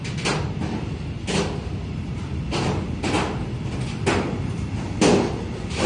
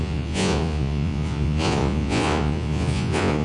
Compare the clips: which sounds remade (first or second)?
second